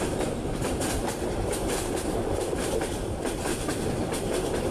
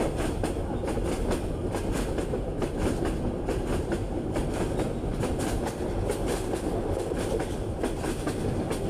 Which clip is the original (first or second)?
second